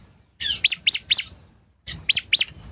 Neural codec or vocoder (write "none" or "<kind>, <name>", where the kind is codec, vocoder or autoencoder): none